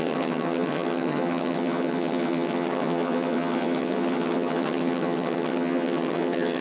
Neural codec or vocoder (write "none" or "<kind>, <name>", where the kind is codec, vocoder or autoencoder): vocoder, HiFi-GAN